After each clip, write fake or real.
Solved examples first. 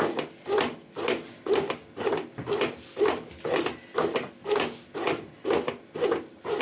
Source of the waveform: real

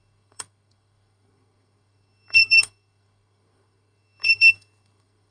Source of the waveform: fake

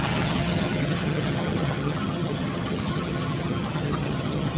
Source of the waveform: fake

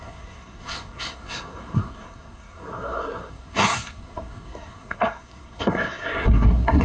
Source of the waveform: fake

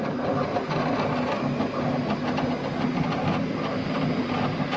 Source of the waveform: real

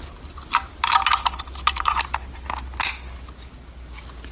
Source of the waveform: real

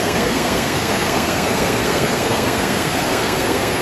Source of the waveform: fake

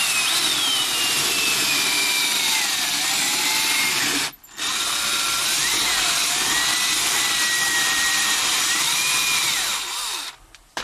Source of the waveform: fake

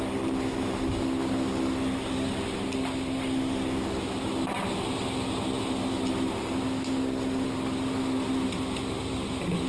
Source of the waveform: real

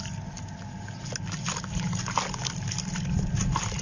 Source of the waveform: real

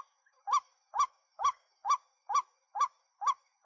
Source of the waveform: fake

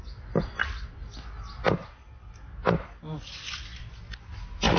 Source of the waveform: real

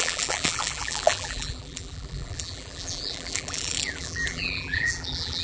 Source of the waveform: fake